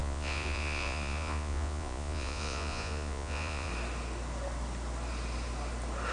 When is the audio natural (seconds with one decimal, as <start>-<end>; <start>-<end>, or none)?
3.7-6.1

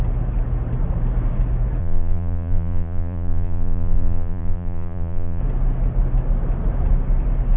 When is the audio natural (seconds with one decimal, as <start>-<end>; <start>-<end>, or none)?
0.0-1.8; 5.4-7.6

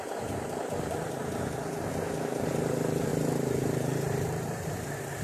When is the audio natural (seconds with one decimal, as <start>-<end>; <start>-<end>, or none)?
none

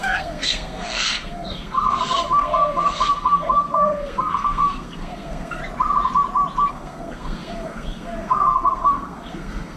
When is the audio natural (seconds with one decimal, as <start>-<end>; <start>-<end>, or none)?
5.6-6.7